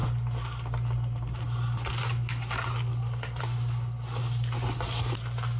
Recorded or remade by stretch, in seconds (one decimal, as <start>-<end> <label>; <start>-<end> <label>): 0.0-5.6 recorded